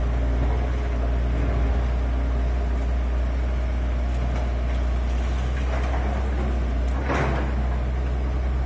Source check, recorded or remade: recorded